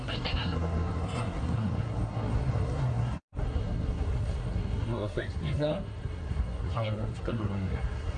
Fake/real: fake